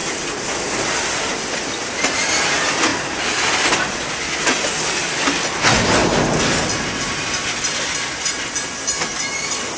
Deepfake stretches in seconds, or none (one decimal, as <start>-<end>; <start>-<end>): none